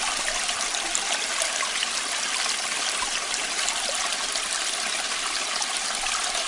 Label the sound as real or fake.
real